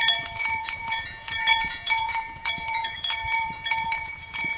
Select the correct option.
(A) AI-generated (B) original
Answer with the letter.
A